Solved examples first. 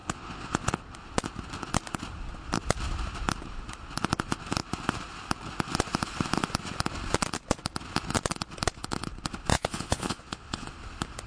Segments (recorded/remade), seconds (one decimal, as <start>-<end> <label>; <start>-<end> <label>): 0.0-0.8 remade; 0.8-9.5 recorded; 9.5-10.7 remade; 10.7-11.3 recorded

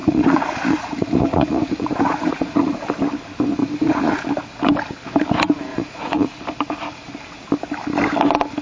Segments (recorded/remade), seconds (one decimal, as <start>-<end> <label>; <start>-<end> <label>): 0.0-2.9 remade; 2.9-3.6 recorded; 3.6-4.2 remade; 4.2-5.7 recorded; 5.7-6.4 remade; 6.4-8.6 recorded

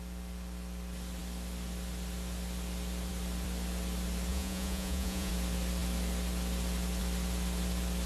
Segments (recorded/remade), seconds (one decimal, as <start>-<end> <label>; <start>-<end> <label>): 0.0-4.3 recorded; 4.3-5.3 remade; 5.3-8.1 recorded

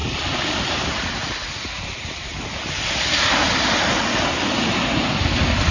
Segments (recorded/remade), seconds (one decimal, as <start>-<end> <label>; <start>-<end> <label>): 0.0-5.7 recorded

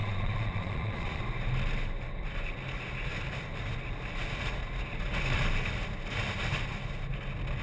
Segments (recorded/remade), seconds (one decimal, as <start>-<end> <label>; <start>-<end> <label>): 0.0-1.2 remade; 1.2-7.6 recorded

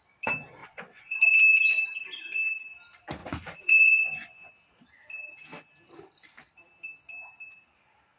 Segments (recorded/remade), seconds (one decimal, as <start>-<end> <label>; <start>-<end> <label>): 0.0-0.6 recorded; 0.6-1.2 remade; 1.2-3.2 recorded; 3.2-4.5 remade; 4.5-8.2 recorded

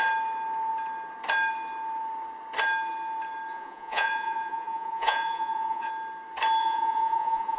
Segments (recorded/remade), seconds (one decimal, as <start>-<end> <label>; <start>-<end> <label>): 0.0-3.5 recorded; 3.5-5.9 remade; 5.9-6.6 recorded; 6.6-7.6 remade